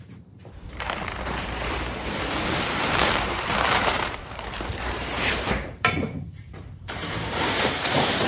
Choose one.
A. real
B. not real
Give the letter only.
B